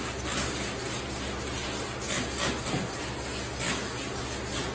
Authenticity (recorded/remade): recorded